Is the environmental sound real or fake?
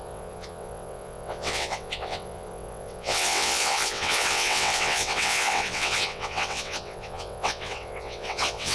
fake